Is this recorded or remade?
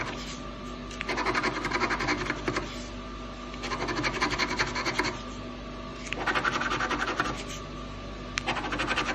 recorded